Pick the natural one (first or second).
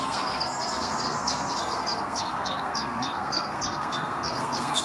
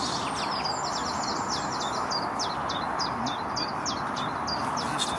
second